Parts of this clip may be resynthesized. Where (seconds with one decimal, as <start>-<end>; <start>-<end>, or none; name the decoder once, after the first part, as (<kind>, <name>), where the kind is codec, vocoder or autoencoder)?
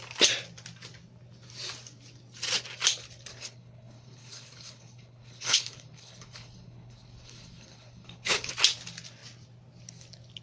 3.3-8.5 (codec, HILCodec)